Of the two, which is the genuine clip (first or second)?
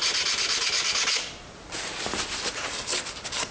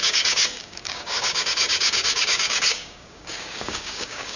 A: first